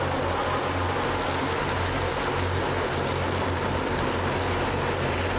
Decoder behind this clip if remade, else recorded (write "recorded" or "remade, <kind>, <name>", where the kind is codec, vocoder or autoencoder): recorded